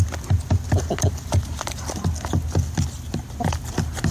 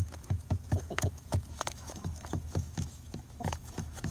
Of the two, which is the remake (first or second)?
second